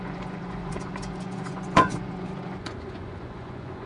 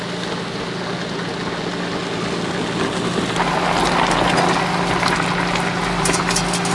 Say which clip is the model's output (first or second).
first